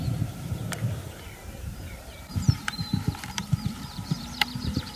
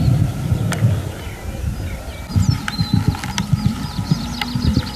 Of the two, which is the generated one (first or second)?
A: first